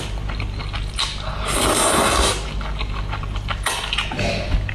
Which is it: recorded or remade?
recorded